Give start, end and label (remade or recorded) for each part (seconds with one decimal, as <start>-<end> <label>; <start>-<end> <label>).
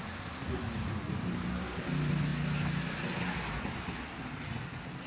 0.0-5.1 recorded